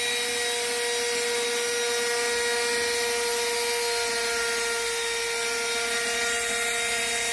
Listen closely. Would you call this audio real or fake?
real